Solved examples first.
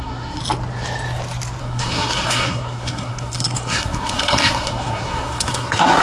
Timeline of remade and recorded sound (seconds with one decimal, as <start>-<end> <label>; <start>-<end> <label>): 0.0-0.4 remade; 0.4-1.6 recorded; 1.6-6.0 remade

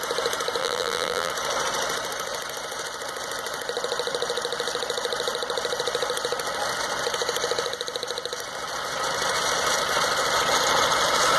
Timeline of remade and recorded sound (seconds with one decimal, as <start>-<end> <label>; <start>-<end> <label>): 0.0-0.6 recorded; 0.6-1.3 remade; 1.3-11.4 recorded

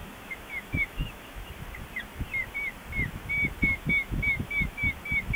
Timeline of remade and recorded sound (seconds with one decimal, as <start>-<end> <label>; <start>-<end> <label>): 0.0-1.5 remade; 1.5-3.6 recorded; 3.6-4.8 remade; 4.8-5.4 recorded